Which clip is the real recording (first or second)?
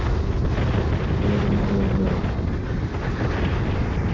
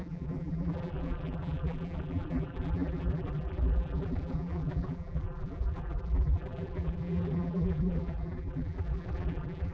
first